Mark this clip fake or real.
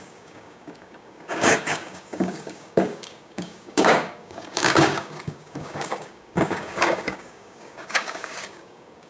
fake